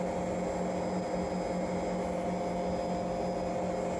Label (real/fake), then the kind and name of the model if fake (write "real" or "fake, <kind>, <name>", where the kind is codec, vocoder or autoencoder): real